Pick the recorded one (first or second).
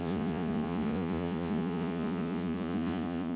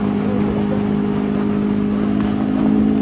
second